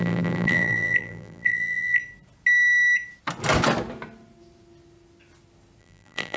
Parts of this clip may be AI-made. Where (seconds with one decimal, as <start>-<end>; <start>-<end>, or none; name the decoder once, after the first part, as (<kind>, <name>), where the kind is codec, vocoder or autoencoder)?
0.0-2.0 (vocoder, BigVGAN v2); 5.8-6.4